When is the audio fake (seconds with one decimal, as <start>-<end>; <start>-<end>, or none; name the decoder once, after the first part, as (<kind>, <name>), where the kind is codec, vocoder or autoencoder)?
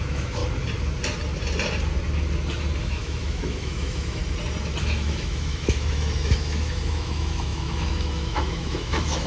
0.0-0.4 (autoencoder, DAC-VAE); 2.8-4.2; 4.8-9.3